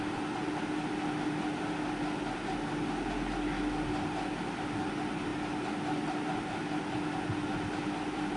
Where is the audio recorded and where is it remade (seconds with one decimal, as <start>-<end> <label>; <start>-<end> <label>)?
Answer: 0.0-8.4 recorded